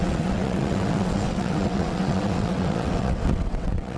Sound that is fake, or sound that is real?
fake